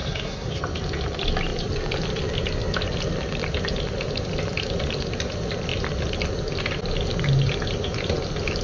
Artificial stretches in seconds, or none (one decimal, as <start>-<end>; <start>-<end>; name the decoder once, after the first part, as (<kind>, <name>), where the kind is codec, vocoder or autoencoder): 0.0-0.6 (codec, SNAC)